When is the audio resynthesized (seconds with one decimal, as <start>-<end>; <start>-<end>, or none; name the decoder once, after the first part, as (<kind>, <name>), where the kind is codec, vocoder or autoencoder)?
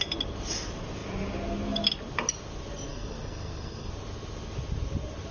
2.9-3.9 (codec, SNAC)